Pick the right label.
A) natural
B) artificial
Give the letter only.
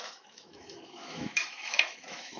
B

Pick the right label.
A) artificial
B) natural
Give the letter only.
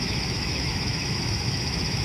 A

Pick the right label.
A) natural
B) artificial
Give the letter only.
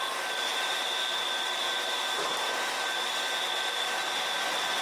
A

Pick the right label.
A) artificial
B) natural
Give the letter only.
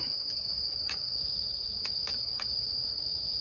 A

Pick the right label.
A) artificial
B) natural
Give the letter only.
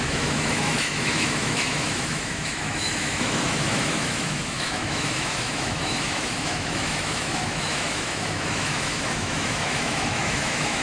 A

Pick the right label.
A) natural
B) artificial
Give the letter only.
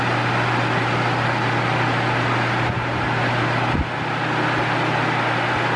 A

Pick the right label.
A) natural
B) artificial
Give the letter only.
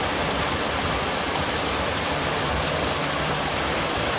A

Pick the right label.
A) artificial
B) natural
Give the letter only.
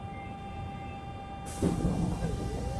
B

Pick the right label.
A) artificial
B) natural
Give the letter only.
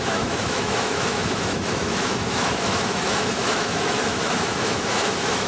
A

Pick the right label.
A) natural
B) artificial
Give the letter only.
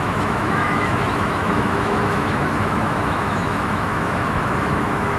B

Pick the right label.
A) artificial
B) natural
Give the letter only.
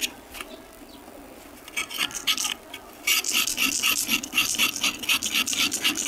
B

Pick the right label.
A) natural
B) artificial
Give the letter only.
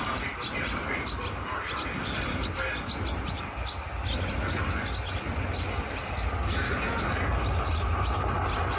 A